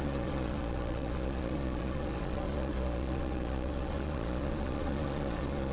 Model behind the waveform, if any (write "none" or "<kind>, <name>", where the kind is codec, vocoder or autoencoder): vocoder, Vocos